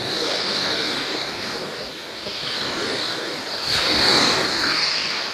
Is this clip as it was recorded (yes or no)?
no